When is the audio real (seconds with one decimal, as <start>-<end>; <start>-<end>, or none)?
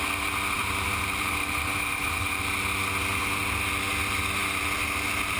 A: 0.0-0.6; 2.4-5.4